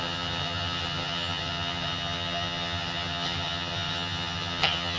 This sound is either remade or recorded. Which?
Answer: remade